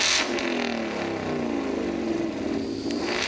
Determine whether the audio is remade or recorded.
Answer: recorded